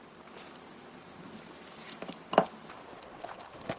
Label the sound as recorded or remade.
recorded